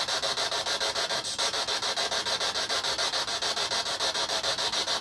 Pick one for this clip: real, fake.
real